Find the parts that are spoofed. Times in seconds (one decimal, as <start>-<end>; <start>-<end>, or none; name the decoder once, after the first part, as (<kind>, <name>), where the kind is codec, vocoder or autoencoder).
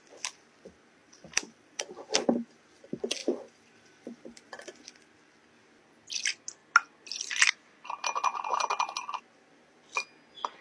1.0-2.0 (vocoder, BigVGAN v2); 3.2-4.9